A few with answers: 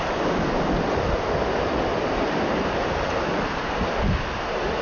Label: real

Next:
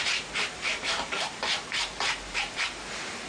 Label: fake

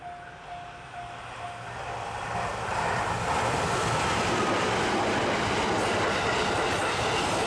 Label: real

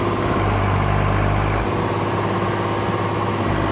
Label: real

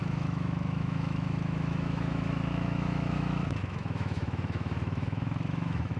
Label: fake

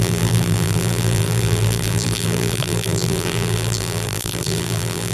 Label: fake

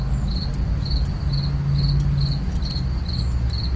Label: real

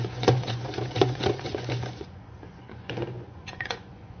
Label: fake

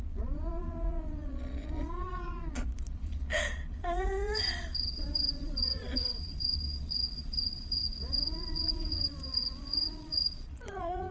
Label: fake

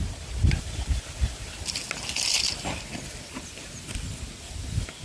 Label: real